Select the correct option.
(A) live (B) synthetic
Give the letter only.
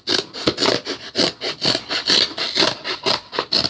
A